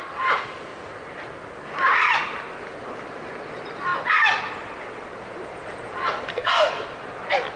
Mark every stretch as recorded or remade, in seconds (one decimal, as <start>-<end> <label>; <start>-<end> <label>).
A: 0.0-6.3 recorded; 6.3-6.8 remade; 6.8-7.6 recorded